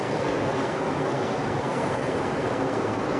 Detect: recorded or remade remade